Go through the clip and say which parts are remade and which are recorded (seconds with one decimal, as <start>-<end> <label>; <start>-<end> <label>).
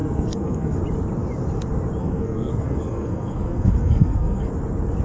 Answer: 0.0-0.8 remade; 0.8-2.0 recorded; 2.0-4.5 remade; 4.5-5.0 recorded